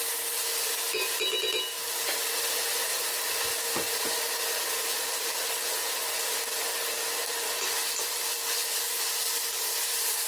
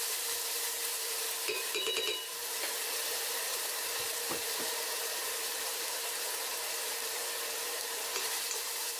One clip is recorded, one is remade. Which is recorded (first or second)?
first